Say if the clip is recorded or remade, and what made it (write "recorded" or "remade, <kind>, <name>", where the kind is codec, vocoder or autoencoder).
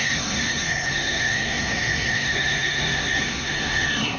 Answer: remade, codec, SNAC